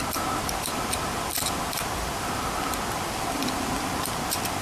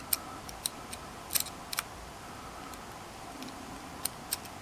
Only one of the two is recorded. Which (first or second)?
second